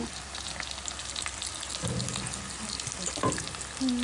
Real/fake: real